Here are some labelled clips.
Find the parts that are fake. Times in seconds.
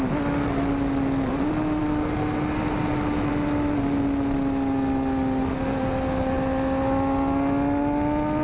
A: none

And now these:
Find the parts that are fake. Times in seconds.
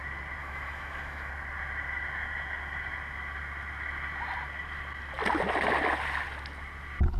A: 0.4-1.3 (autoencoder, DAC-VAE)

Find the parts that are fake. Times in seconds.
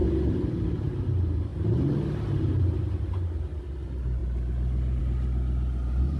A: none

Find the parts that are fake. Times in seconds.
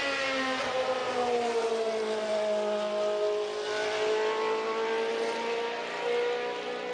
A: none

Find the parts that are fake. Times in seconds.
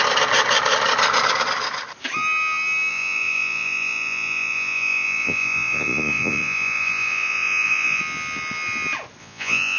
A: 2.9-8.0 (vocoder, Vocos); 9.2-9.8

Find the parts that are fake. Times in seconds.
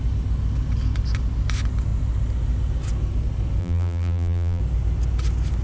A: 3.6-4.6 (vocoder, BigVGAN v2)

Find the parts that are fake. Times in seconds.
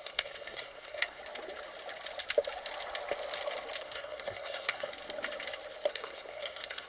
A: 0.0-1.2 (codec, SNAC); 3.8-4.9; 5.9-6.9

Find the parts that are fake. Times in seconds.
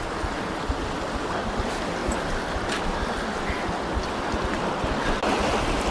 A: none